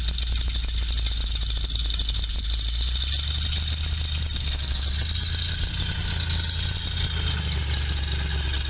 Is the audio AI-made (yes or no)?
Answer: no